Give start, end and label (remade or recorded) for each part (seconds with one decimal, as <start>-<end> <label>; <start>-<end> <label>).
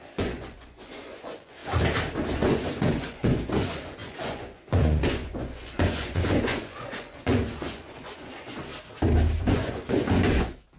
0.0-1.6 remade; 1.6-2.3 recorded; 2.3-8.7 remade; 8.7-9.4 recorded; 9.4-10.8 remade